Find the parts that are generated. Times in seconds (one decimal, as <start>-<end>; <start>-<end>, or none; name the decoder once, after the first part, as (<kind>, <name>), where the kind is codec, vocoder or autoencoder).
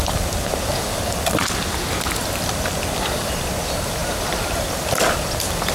0.0-1.4 (vocoder, BigVGAN v2); 2.2-5.7